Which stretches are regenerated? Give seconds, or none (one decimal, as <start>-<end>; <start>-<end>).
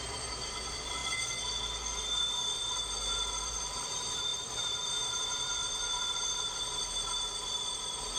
0.0-1.0; 3.3-8.2